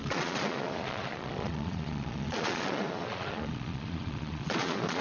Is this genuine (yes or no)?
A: no